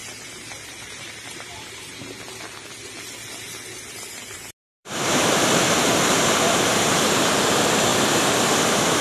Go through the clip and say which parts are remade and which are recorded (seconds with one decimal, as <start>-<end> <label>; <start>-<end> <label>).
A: 0.0-4.6 recorded; 4.6-7.2 remade; 7.2-7.9 recorded; 7.9-9.0 remade